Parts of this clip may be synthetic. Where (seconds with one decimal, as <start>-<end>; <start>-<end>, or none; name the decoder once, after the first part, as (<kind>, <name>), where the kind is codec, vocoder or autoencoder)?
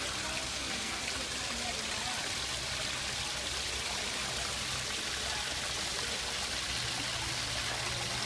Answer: 0.5-1.0 (codec, SNAC)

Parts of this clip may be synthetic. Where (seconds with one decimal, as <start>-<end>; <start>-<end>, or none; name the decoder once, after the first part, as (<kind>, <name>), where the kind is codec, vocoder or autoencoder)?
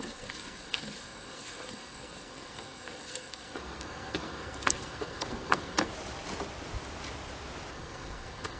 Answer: 0.0-5.9 (codec, SNAC); 7.7-8.6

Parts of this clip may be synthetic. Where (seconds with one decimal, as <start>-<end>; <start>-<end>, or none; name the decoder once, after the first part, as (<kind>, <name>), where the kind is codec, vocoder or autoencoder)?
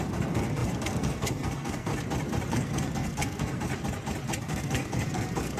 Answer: 0.0-1.9 (codec, SNAC); 2.5-3.7; 4.4-5.6